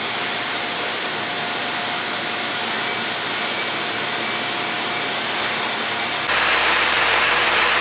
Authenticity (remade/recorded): recorded